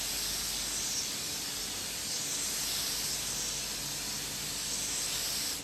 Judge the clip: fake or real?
real